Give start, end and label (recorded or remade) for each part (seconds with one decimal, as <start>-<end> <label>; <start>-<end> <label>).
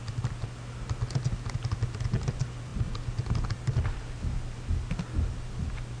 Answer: 0.0-6.0 recorded